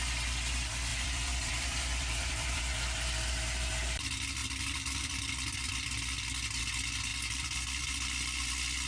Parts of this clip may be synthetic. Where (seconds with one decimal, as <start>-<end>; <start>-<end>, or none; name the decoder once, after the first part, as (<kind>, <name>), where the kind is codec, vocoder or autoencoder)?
0.9-2.6 (vocoder, BigVGAN v2); 4.4-6.6; 7.1-7.9